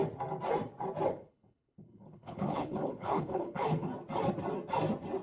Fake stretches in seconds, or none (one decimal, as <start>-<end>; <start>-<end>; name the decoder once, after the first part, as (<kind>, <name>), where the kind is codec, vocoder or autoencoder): 1.1-3.9 (codec, HILCodec)